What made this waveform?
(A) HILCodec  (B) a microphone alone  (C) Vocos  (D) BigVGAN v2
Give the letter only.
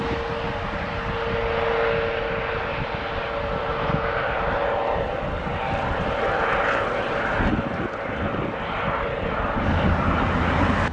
B